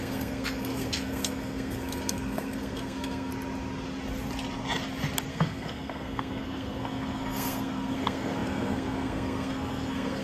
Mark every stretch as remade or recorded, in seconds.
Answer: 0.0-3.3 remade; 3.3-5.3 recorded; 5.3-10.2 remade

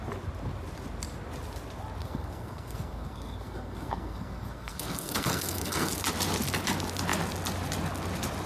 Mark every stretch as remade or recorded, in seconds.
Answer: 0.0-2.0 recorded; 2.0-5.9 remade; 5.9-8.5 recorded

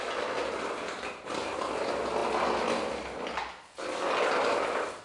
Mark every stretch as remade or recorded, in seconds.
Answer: 0.0-5.0 recorded

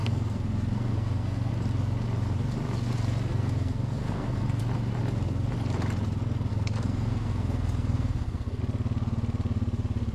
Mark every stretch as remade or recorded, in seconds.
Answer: 0.0-1.5 remade; 1.5-3.3 recorded; 3.3-4.6 remade; 4.6-6.5 recorded; 6.5-8.6 remade; 8.6-10.1 recorded